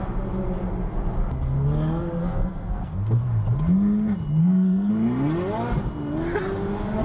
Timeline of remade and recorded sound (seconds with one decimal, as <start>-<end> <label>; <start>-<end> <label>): 0.0-2.2 recorded; 2.2-3.2 remade; 3.2-4.4 recorded; 4.4-4.9 remade; 4.9-7.0 recorded